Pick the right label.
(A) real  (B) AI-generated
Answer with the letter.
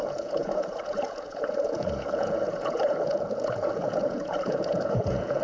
B